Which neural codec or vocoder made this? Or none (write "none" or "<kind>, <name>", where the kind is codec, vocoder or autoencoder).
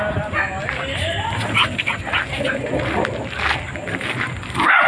none